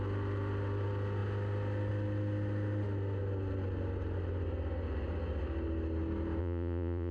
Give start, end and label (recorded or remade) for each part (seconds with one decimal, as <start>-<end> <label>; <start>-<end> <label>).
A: 0.0-6.4 recorded; 6.4-7.1 remade